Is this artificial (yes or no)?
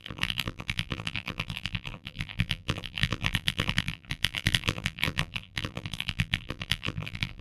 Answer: yes